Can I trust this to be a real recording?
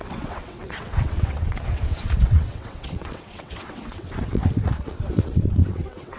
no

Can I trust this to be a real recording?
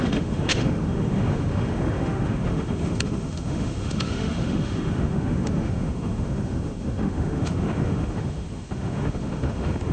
no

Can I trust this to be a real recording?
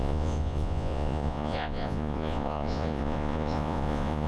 no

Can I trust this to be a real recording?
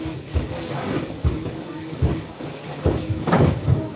no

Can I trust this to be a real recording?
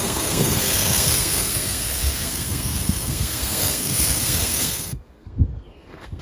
no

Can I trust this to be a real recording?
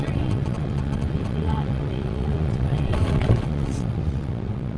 no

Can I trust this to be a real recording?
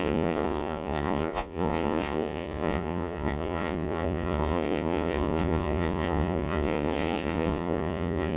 no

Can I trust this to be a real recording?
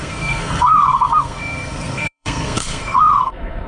no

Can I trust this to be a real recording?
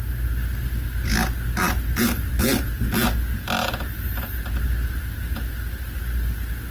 yes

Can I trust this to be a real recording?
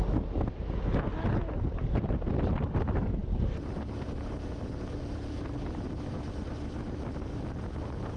yes